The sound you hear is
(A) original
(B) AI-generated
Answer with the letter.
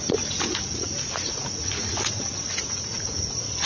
B